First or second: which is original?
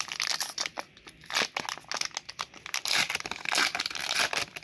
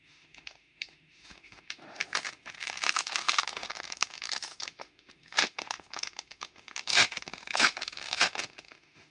first